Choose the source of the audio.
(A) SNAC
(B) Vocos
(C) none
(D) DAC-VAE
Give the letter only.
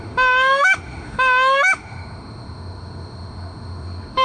D